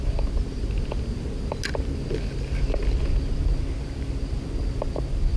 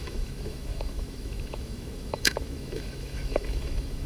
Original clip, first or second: first